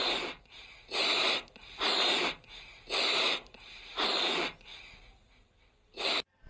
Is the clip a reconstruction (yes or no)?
no